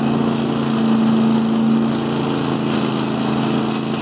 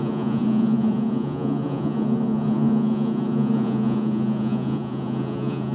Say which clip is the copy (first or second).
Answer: second